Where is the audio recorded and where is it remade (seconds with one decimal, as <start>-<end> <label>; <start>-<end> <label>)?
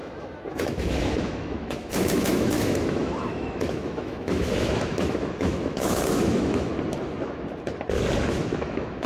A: 0.0-6.7 remade; 6.7-8.3 recorded; 8.3-9.1 remade